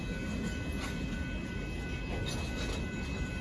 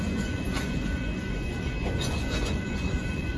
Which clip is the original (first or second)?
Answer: first